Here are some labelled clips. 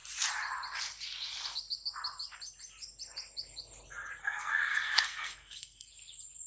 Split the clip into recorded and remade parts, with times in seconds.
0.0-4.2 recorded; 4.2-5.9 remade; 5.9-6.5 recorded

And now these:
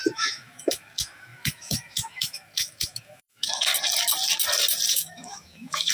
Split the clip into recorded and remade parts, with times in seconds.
0.0-3.7 remade; 3.7-4.9 recorded; 4.9-5.9 remade

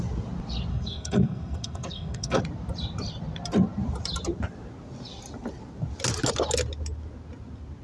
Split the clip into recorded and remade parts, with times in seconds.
0.0-0.7 recorded; 0.7-2.4 remade; 2.4-7.8 recorded

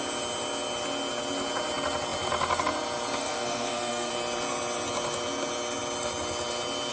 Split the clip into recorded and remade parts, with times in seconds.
0.0-3.2 recorded; 3.2-4.1 remade; 4.1-6.9 recorded

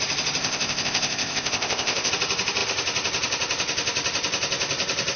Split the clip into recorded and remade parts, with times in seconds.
0.0-0.4 recorded; 0.4-2.1 remade; 2.1-5.2 recorded

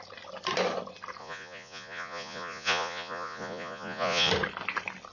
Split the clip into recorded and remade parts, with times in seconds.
0.0-1.2 recorded; 1.2-4.3 remade; 4.3-5.1 recorded